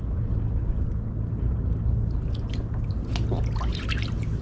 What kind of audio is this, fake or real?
real